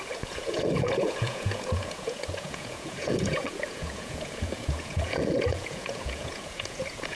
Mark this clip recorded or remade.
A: remade